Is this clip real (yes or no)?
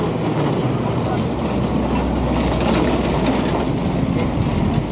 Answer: yes